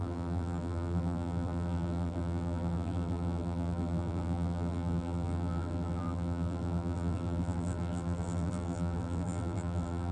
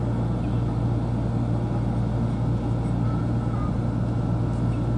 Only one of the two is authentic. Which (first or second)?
second